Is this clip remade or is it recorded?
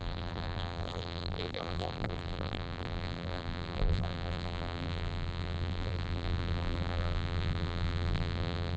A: remade